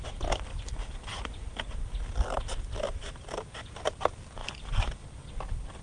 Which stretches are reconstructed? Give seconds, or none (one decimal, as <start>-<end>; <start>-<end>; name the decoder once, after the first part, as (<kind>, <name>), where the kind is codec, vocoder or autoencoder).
none